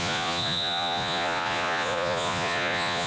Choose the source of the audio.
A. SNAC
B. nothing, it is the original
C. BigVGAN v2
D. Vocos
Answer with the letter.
D